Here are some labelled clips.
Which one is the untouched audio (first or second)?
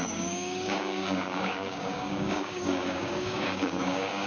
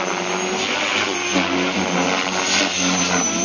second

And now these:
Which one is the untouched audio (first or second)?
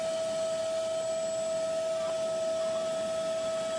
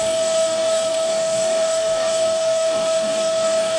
first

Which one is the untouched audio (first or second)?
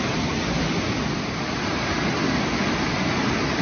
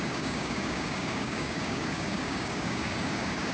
first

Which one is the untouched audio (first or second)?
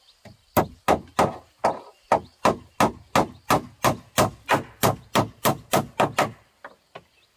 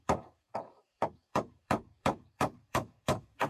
first